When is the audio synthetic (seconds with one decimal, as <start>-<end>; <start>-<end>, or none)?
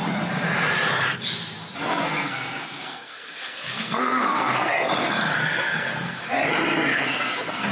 1.9-4.7; 5.4-6.2; 6.9-7.7